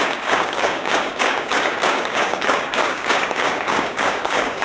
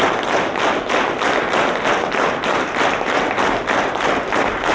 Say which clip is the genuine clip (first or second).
second